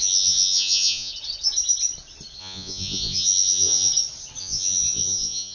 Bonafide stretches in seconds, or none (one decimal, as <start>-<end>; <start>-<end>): 1.1-2.4; 3.9-4.4